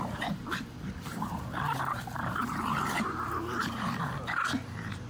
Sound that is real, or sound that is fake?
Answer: fake